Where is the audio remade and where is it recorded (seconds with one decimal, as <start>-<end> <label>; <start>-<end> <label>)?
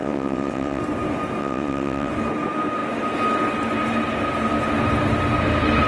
0.0-0.8 remade; 0.8-1.4 recorded; 1.4-2.1 remade; 2.1-5.9 recorded